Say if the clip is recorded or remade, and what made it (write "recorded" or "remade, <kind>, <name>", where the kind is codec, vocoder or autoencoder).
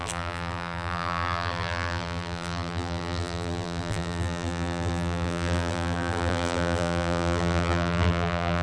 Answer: remade, vocoder, BigVGAN v2